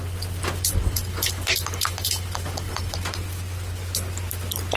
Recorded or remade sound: recorded